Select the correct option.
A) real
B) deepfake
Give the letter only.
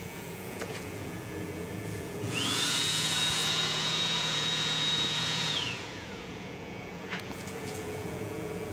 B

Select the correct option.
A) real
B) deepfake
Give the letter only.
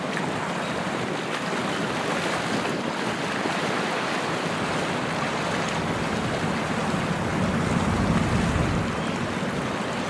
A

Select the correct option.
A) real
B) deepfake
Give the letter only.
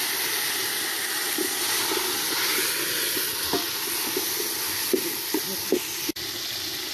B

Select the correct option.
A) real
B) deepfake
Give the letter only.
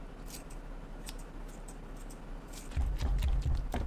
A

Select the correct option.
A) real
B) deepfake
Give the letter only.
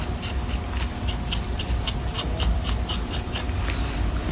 A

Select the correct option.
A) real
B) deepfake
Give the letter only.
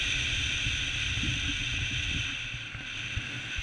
A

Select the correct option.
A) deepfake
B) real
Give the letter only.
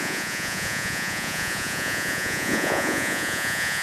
A